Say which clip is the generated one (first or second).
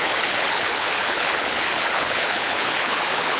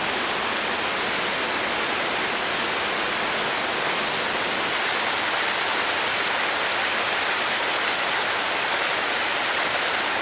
first